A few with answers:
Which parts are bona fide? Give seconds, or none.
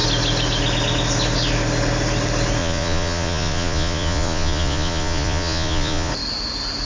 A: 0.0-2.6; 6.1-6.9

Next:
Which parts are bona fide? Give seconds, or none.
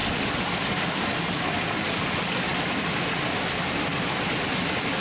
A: 0.0-5.0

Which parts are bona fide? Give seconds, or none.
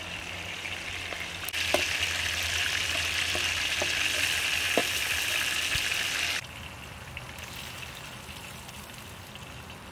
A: 0.0-9.9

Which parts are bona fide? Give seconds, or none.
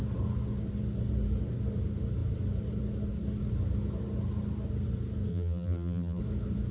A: 0.0-5.3; 6.2-6.7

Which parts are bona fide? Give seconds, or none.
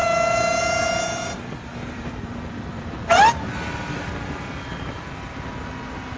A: 0.0-1.7; 2.7-6.2